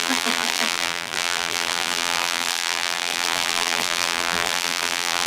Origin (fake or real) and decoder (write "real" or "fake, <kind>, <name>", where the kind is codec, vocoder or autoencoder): fake, vocoder, BigVGAN v2